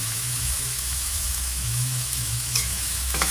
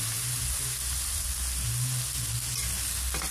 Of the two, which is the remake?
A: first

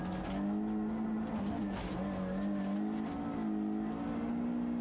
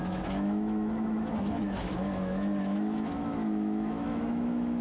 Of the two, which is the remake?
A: second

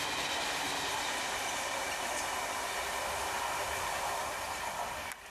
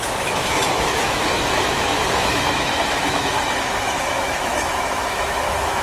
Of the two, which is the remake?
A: second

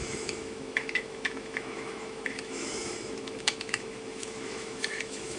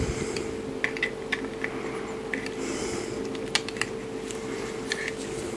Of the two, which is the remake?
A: first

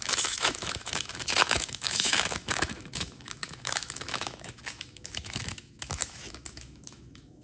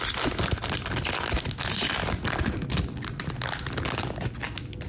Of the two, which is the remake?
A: first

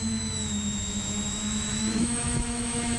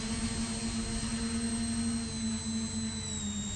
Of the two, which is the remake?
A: first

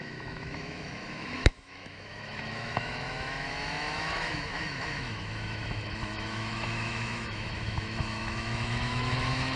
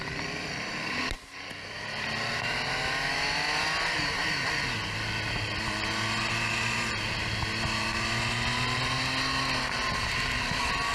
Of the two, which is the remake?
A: first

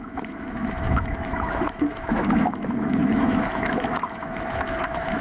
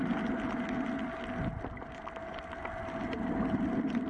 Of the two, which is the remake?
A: first